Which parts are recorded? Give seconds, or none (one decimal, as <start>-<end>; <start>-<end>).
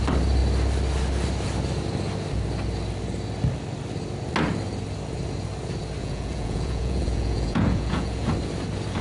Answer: 0.0-6.0; 8.3-9.0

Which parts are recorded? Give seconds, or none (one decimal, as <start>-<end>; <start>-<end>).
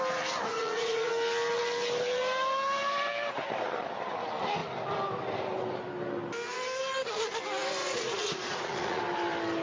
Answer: 0.0-0.5; 1.1-7.8; 9.0-9.6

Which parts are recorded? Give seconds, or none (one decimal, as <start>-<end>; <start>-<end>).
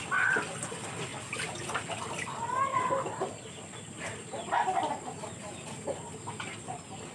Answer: 0.0-7.1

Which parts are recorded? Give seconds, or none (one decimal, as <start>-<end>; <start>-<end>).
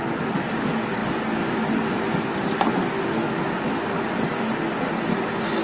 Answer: 0.0-5.6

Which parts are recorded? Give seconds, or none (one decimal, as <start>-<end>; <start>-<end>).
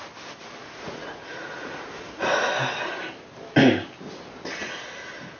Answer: 0.0-0.6; 2.5-5.4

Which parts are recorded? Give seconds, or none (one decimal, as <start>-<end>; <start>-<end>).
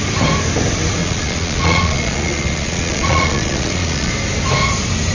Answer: 0.0-1.0; 4.1-5.1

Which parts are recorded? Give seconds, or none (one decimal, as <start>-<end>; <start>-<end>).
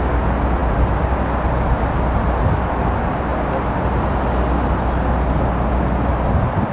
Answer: 0.0-6.7